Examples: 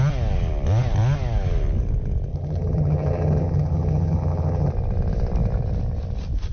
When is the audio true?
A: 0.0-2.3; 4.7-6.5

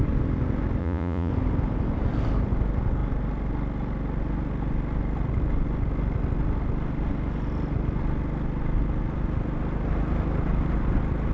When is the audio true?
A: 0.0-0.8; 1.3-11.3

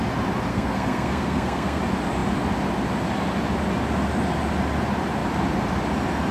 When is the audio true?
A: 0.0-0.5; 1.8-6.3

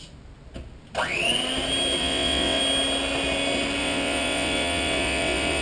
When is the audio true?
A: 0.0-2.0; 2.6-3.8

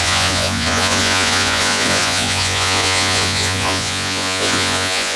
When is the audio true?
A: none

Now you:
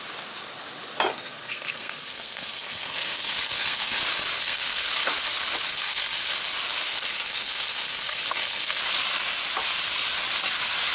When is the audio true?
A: 0.0-1.1; 4.0-4.4; 4.9-5.7; 6.3-6.9; 8.8-10.9

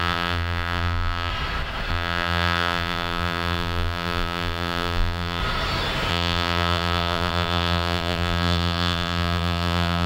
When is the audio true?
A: 1.3-1.9; 5.4-6.1